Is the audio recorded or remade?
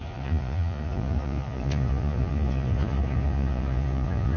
remade